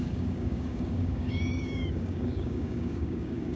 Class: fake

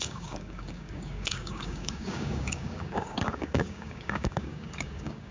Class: fake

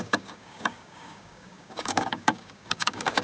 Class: fake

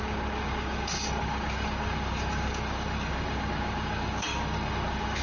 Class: fake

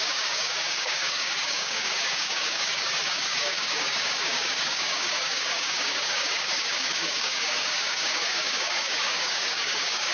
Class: fake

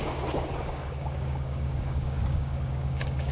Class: fake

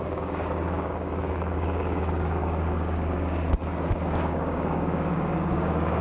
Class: fake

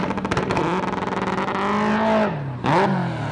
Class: real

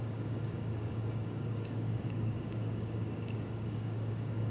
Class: fake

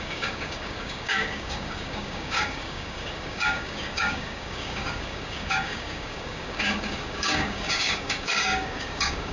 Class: fake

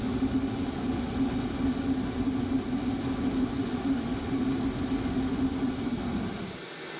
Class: real